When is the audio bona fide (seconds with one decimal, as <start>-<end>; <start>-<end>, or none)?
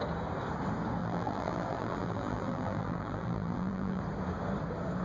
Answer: 0.0-1.0; 4.0-5.0